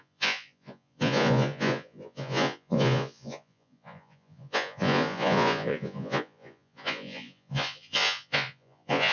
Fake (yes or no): yes